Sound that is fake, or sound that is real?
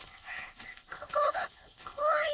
fake